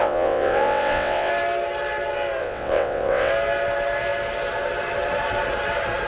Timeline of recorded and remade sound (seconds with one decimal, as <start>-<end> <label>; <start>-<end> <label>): 0.0-1.3 remade; 1.3-2.4 recorded; 2.4-3.3 remade; 3.3-6.1 recorded